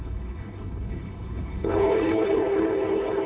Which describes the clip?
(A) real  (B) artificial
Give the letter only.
B